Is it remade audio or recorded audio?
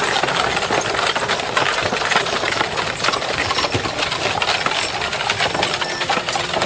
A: recorded